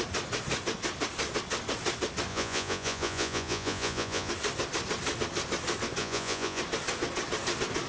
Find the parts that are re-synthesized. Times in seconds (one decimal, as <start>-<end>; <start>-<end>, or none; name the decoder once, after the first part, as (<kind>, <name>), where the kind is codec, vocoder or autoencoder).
2.3-4.3 (vocoder, Vocos); 6.0-6.6